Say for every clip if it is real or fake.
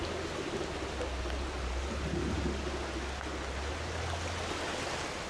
real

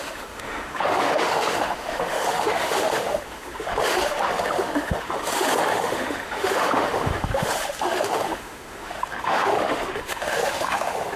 fake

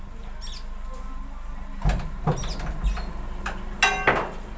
real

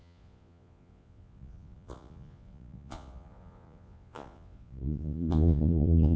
fake